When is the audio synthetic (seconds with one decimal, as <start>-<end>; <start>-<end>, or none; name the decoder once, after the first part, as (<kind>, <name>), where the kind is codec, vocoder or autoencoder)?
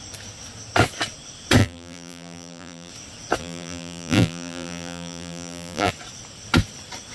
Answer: 1.6-2.9 (vocoder, BigVGAN v2); 3.4-5.9